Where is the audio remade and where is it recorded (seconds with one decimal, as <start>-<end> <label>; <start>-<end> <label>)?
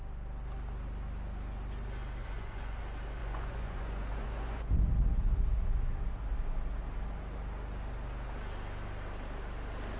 0.0-2.2 recorded; 2.2-2.8 remade; 2.8-3.2 recorded; 3.2-4.8 remade; 4.8-10.0 recorded